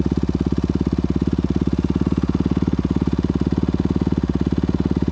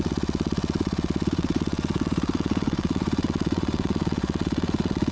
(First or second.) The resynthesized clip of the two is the second